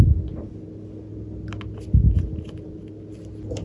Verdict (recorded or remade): recorded